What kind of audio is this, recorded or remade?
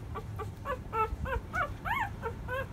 remade